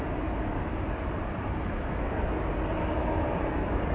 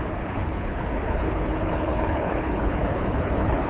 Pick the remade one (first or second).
second